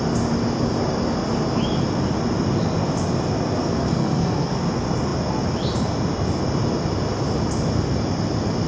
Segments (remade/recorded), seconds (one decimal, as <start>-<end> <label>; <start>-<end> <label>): 0.0-3.6 recorded; 3.6-4.6 remade; 4.6-8.7 recorded